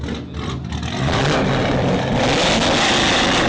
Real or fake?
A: real